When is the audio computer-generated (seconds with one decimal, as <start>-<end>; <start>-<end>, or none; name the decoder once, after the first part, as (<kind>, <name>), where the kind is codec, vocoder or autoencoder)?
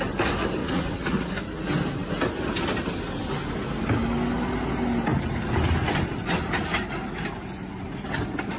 0.6-1.3 (vocoder, Vocos)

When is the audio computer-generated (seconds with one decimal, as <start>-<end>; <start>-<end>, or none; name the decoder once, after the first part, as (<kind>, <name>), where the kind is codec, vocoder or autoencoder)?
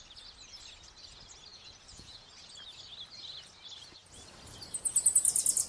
1.5-2.3 (vocoder, Vocos)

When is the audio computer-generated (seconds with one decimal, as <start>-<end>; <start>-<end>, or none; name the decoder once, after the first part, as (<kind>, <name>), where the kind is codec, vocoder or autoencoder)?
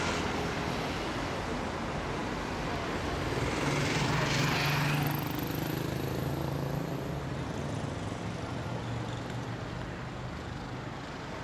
none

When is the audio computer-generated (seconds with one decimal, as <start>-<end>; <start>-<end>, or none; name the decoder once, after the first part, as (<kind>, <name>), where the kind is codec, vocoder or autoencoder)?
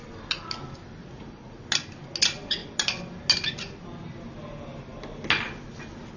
1.0-1.6 (vocoder, Vocos)